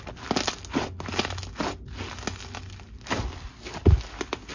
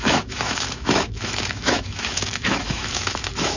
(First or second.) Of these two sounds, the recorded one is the first